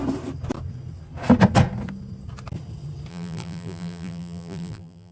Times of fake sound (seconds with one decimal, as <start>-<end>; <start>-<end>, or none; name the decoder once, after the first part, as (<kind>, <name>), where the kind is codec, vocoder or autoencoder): 3.1-5.1 (vocoder, BigVGAN v2)